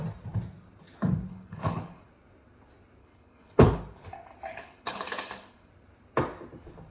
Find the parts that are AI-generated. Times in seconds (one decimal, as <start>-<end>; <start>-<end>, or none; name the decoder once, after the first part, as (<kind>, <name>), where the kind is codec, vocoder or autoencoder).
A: 1.3-2.1 (codec, HILCodec); 3.0-3.8; 4.5-5.7